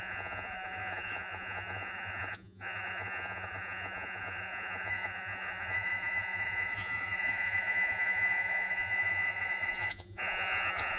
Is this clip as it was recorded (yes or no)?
no